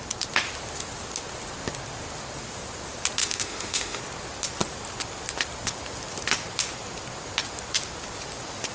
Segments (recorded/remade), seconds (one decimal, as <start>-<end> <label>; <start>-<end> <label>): 0.0-3.2 recorded; 3.2-4.0 remade; 4.0-8.7 recorded